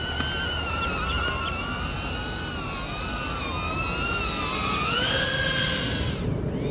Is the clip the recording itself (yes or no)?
yes